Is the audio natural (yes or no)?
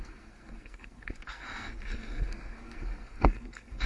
no